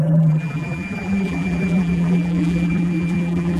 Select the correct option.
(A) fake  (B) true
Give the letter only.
A